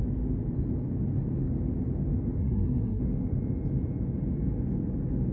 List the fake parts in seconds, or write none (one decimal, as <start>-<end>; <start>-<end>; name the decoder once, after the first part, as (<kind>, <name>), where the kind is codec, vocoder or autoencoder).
2.4-3.0 (codec, SNAC)